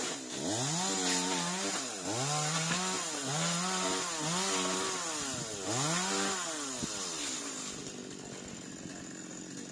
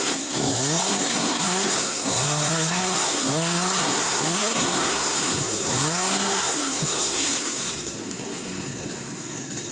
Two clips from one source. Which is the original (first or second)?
first